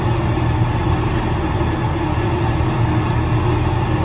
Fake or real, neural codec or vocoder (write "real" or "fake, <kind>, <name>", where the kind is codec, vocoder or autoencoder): real